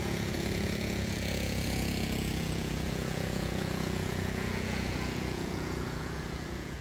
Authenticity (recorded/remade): remade